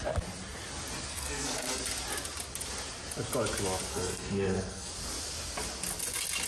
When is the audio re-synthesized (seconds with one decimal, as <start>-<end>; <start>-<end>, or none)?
1.1-1.8; 3.9-4.9